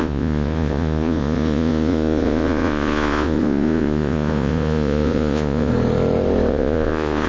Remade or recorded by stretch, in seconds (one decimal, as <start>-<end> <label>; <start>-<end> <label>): 0.0-5.7 remade; 5.7-6.5 recorded; 6.5-7.3 remade